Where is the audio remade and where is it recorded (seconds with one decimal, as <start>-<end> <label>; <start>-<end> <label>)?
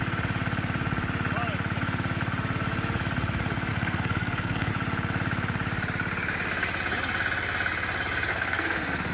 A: 0.0-3.7 recorded; 3.7-4.7 remade; 4.7-8.3 recorded; 8.3-9.1 remade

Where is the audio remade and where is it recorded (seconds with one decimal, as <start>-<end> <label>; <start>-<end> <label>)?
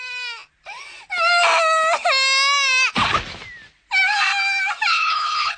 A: 0.0-4.9 recorded; 4.9-5.6 remade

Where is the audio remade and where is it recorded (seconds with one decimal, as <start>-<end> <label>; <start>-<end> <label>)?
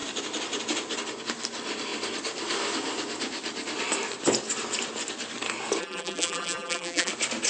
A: 0.0-5.8 recorded; 5.8-7.1 remade; 7.1-7.5 recorded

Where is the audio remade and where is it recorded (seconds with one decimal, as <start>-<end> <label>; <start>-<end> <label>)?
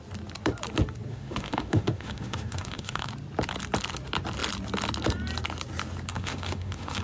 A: 0.0-1.1 recorded; 1.1-3.1 remade; 3.1-6.1 recorded; 6.1-7.0 remade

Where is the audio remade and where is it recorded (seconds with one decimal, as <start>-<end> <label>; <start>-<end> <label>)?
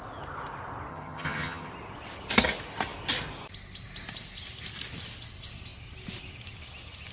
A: 0.0-0.9 recorded; 0.9-1.7 remade; 1.7-7.1 recorded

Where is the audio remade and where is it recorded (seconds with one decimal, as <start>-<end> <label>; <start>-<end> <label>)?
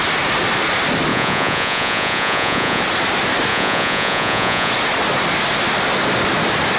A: 0.0-1.1 recorded; 1.1-2.8 remade; 2.8-3.5 recorded; 3.5-4.7 remade; 4.7-6.8 recorded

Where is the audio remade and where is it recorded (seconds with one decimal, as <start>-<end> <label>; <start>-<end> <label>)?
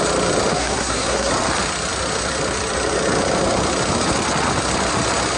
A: 0.0-0.5 recorded; 0.5-1.3 remade; 1.3-5.4 recorded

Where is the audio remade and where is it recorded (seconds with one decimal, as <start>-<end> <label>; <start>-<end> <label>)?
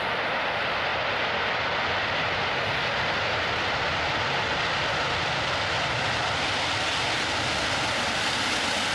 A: 0.0-8.9 recorded